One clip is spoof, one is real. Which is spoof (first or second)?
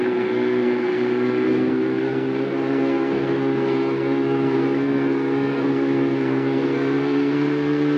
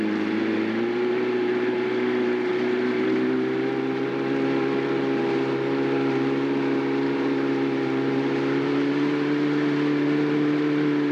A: first